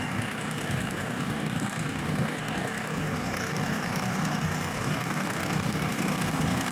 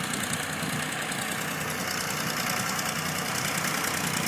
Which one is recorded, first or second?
second